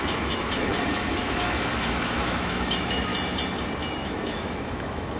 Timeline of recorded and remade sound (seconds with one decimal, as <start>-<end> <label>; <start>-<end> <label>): 0.0-3.1 remade; 3.1-3.9 recorded; 3.9-5.2 remade